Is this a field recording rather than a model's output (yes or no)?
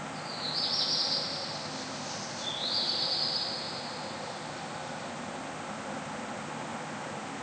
yes